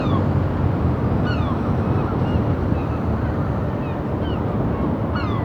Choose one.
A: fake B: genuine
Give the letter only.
B